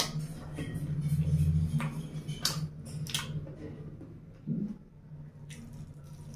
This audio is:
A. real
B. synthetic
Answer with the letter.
A